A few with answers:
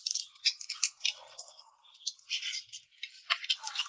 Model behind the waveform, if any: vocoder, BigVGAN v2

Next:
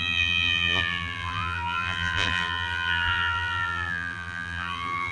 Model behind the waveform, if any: vocoder, BigVGAN v2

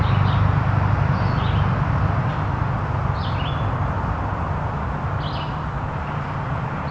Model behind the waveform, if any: none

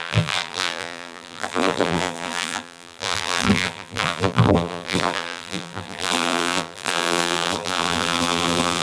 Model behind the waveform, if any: vocoder, BigVGAN v2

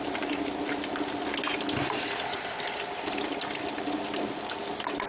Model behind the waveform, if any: vocoder, BigVGAN v2